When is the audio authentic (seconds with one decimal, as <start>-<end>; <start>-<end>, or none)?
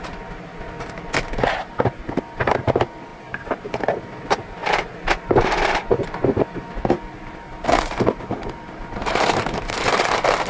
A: 0.0-10.5